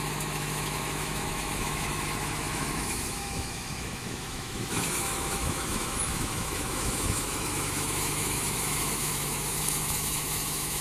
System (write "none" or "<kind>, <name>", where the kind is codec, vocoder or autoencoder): autoencoder, DAC-VAE